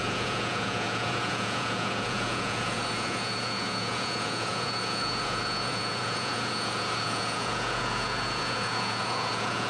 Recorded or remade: remade